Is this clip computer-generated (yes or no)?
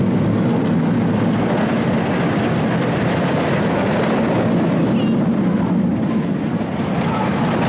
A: no